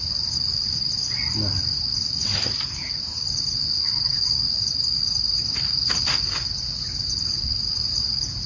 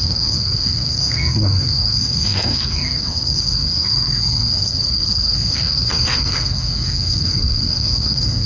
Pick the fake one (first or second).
second